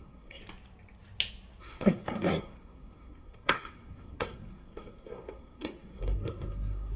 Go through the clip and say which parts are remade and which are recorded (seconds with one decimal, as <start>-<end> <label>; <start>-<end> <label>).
0.0-0.4 remade; 0.4-1.6 recorded; 1.6-7.0 remade